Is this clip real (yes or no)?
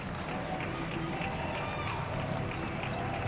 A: yes